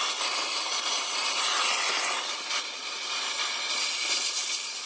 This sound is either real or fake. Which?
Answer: real